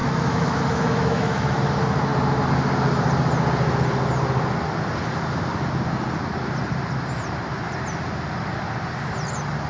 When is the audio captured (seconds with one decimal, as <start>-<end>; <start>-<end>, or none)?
1.6-9.7